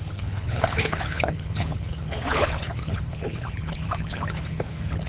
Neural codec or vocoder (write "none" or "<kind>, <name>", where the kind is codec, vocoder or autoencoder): codec, HILCodec